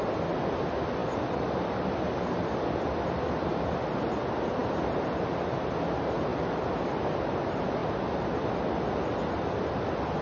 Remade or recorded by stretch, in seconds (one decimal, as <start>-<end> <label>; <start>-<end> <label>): 0.0-1.0 recorded; 1.0-3.9 remade; 3.9-6.3 recorded; 6.3-7.1 remade; 7.1-7.8 recorded; 7.8-9.7 remade; 9.7-10.2 recorded